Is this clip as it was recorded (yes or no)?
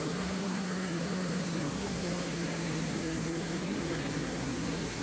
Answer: no